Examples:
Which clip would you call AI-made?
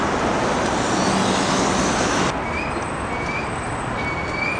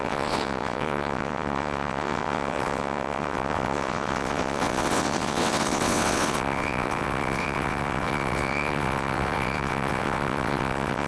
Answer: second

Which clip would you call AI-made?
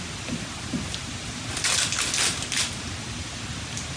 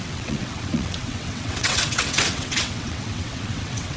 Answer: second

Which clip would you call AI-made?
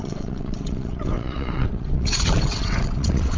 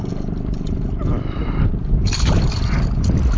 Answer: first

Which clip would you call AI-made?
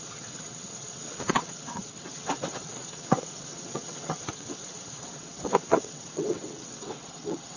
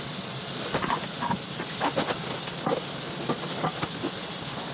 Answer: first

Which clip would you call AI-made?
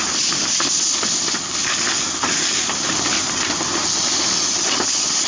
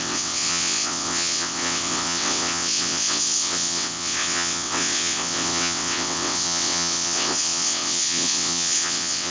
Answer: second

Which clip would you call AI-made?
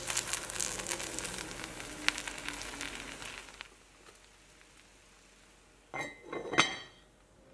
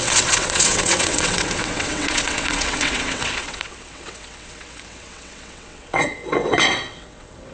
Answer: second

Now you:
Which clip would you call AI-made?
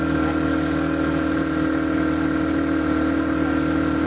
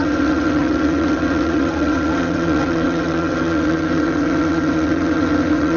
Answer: second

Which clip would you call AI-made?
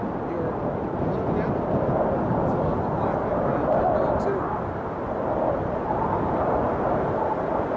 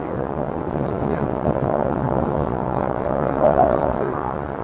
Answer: second